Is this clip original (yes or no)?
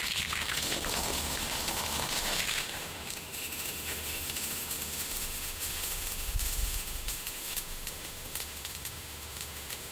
no